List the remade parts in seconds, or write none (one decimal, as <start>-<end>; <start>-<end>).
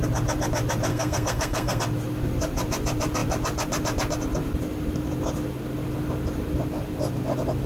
0.9-1.8